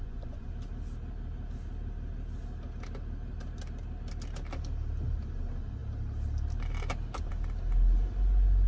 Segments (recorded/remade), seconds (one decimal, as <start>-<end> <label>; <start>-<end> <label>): 0.0-0.5 remade; 0.5-8.7 recorded